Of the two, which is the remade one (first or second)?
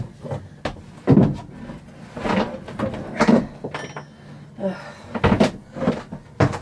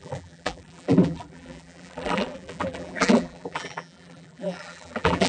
second